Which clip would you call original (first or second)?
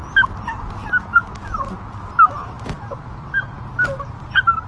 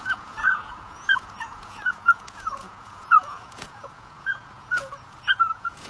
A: first